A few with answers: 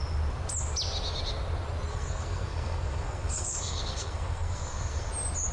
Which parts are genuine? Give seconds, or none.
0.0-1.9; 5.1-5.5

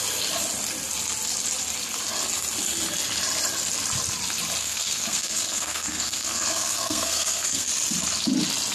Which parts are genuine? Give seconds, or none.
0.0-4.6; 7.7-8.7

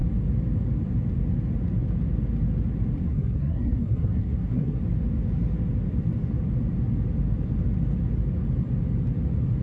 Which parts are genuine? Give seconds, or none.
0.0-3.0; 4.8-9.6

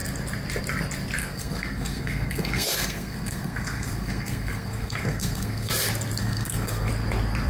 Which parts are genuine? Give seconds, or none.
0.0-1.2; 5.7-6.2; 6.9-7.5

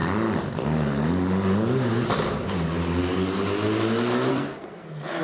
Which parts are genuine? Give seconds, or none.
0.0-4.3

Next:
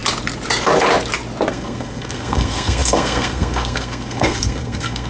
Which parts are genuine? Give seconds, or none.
0.0-1.5

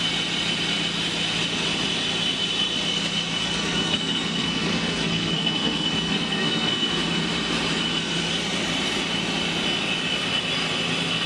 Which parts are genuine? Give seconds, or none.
0.0-3.4; 6.9-11.3